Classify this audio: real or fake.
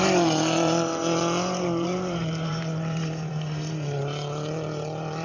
fake